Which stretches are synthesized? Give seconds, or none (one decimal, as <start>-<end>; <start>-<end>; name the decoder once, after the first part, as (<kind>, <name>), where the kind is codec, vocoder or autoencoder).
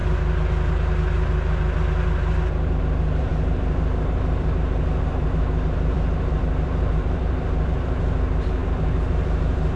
2.8-9.8 (vocoder, BigVGAN v2)